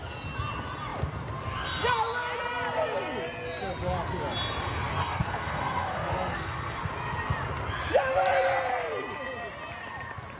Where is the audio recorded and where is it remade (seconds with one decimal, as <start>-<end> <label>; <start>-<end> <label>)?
0.0-5.0 recorded; 5.0-6.9 remade; 6.9-10.4 recorded